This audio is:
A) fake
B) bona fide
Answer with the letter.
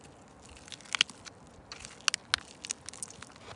B